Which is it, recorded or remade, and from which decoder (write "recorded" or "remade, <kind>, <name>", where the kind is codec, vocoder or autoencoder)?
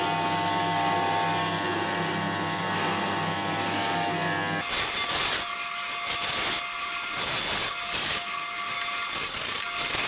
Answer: recorded